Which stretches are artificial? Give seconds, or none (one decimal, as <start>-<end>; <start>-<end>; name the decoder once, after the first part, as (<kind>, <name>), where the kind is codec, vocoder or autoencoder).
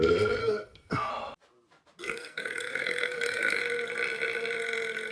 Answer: 0.4-1.1 (codec, SNAC); 2.0-3.6